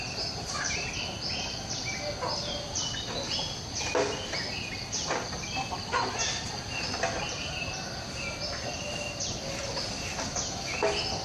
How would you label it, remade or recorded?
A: recorded